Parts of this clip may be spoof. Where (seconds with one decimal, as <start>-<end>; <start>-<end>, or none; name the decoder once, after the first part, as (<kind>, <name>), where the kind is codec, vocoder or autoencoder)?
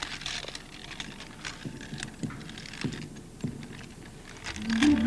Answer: none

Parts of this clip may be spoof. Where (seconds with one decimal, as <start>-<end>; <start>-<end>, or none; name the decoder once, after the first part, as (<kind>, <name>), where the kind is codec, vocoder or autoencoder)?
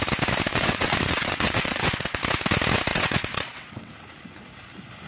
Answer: 0.5-2.2 (vocoder, WaveNeXt); 2.9-3.9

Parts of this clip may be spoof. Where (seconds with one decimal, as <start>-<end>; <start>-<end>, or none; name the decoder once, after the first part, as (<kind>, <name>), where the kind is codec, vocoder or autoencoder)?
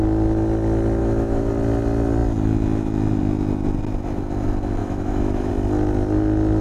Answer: 1.0-1.5 (autoencoder, DAC-VAE); 4.8-5.5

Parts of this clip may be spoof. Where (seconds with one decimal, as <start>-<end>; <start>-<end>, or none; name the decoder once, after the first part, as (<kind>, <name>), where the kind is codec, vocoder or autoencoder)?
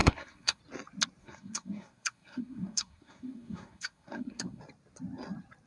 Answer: 0.0-0.6 (codec, SNAC); 1.2-4.6